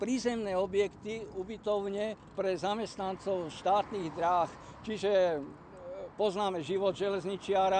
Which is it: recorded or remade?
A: recorded